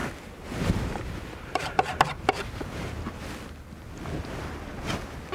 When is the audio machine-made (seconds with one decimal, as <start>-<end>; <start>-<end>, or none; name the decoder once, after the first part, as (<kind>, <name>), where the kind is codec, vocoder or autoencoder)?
0.0-3.2 (vocoder, BigVGAN v2)